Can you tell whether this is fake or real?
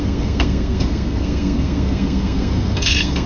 fake